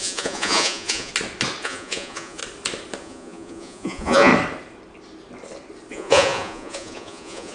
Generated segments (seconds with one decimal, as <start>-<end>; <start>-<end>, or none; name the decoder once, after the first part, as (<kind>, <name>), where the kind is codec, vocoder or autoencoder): 0.0-1.1 (vocoder, Vocos); 1.6-2.4; 3.0-4.3; 5.9-7.5